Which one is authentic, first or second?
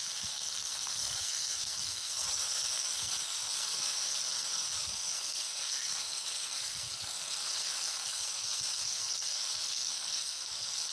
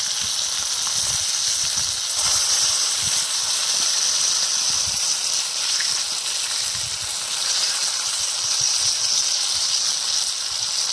second